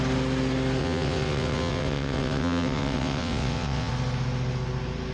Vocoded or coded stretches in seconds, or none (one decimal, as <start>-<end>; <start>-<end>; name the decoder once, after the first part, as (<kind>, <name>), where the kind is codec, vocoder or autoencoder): 0.8-3.9 (vocoder, WaveNeXt)